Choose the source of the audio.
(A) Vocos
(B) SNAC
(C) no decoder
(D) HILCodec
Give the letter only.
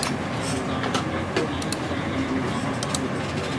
C